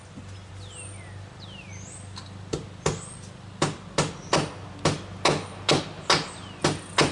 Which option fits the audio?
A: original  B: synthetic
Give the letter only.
A